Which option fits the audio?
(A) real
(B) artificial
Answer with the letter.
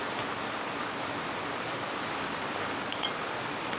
A